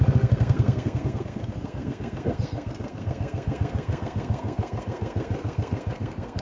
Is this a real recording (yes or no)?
no